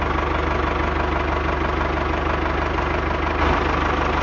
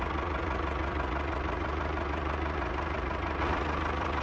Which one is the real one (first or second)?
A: first